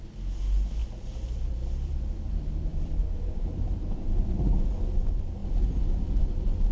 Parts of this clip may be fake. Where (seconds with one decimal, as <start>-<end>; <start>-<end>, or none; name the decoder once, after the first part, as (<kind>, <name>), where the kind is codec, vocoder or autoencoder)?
0.8-4.6 (vocoder, BigVGAN v2)